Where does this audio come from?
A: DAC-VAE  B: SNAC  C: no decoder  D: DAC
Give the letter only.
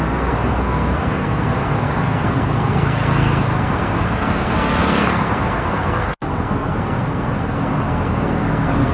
B